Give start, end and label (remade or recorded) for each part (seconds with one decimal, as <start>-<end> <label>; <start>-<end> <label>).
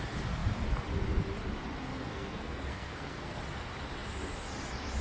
0.0-1.9 recorded; 1.9-3.4 remade; 3.4-5.0 recorded